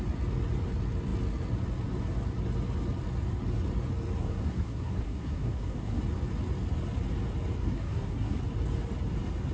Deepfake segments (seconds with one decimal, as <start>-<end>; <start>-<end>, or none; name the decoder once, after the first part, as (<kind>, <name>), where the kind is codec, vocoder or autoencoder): 4.2-6.0 (codec, SNAC); 7.6-8.4